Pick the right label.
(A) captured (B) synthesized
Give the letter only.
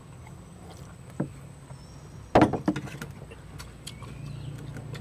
A